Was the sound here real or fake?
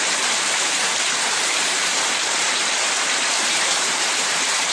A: fake